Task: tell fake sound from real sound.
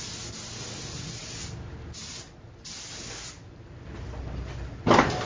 real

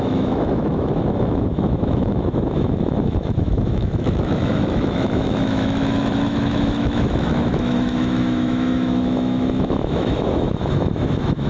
fake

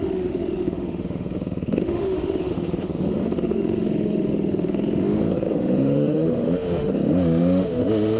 fake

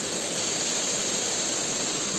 real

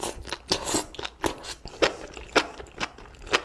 real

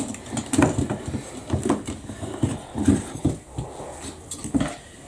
real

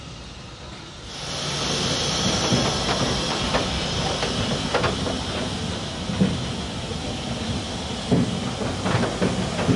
real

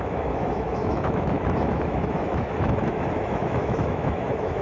fake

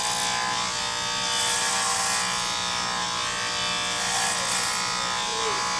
real